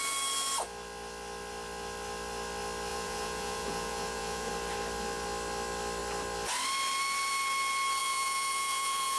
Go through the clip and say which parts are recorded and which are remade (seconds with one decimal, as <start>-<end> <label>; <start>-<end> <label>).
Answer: 0.0-2.9 recorded; 2.9-4.5 remade; 4.5-8.0 recorded; 8.0-9.2 remade